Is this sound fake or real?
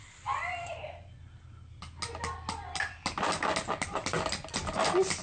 real